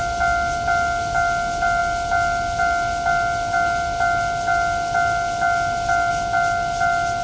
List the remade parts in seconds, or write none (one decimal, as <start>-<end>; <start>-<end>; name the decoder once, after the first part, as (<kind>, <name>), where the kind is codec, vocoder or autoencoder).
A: none